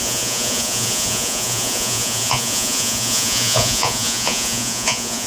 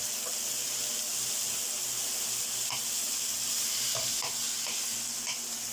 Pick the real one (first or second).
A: second